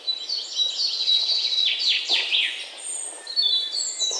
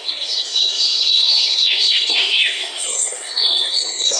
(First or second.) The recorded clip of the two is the first